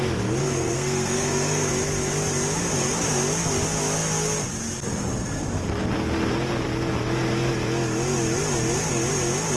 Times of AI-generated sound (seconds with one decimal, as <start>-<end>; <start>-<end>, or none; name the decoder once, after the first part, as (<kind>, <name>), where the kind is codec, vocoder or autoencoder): 0.4-1.7 (codec, SNAC)